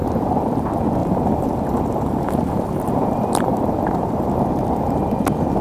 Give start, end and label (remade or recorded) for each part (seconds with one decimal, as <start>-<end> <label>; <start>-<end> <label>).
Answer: 0.0-1.0 recorded; 1.0-4.4 remade; 4.4-5.6 recorded